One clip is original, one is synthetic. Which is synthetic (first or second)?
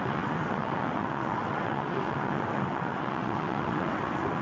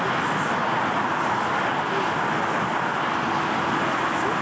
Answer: first